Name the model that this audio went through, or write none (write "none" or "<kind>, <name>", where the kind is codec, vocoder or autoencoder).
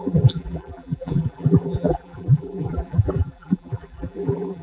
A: vocoder, BigVGAN v2